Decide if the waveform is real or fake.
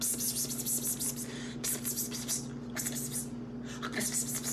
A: real